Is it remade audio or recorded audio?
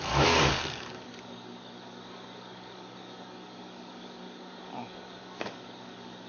remade